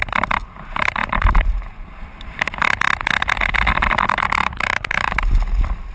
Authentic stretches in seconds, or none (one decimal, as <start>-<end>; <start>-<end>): 0.0-1.0; 2.4-4.4; 5.1-5.9

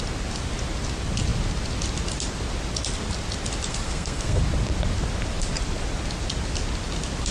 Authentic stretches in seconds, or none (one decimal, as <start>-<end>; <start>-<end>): 0.0-3.7; 4.4-7.3

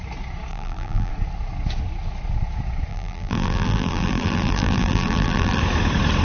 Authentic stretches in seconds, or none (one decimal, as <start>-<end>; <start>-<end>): 0.0-0.5; 1.1-2.9; 5.6-6.2

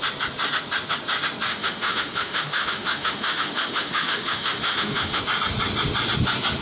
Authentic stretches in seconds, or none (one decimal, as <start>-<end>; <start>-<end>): 0.0-1.5; 5.2-6.6

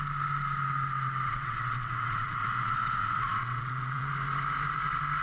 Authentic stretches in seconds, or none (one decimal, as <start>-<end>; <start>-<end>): 0.0-1.3; 4.1-5.2

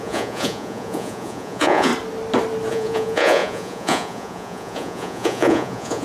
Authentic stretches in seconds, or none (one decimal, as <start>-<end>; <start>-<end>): 1.9-2.7

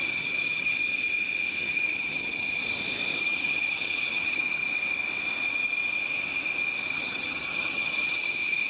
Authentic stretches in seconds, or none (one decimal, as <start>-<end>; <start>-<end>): 0.8-1.6; 2.6-3.2; 4.6-6.9